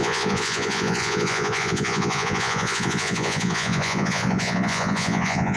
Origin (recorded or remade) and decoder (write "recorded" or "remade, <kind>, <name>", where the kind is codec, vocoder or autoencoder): remade, vocoder, Vocos